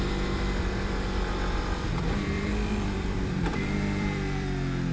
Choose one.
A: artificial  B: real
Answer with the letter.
A